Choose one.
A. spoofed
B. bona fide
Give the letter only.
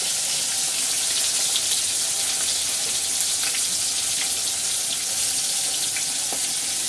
B